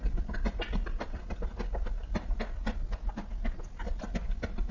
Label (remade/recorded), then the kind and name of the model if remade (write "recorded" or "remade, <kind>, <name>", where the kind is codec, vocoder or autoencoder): recorded